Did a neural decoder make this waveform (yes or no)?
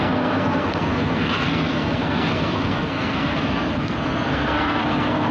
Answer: yes